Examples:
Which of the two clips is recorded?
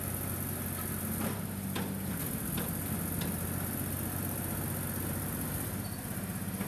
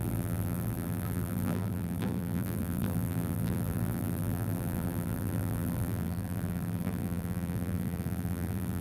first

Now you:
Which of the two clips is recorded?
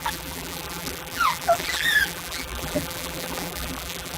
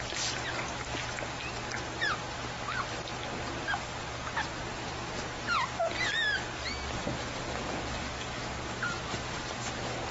second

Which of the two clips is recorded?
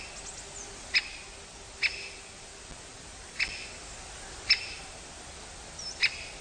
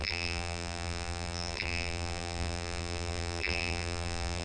first